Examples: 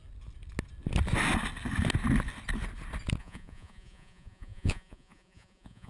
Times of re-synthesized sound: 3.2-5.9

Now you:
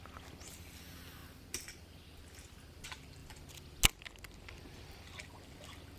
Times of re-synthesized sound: none